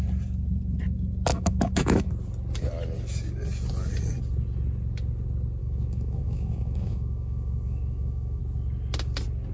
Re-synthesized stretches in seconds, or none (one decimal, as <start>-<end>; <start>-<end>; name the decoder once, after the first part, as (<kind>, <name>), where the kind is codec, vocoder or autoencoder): 1.3-2.1 (autoencoder, DAC-VAE); 5.6-8.4